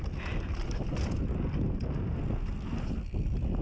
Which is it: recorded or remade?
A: recorded